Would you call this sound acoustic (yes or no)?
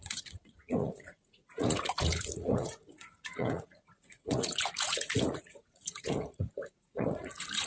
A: no